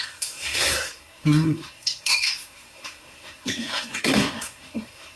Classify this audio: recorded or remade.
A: remade